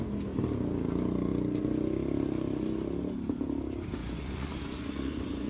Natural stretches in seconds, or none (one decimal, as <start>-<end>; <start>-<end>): 0.0-4.0